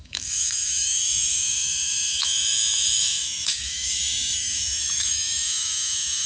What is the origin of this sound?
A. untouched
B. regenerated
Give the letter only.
B